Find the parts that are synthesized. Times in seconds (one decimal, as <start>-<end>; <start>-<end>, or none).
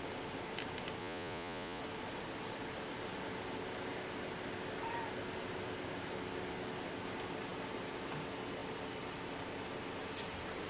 1.0-1.8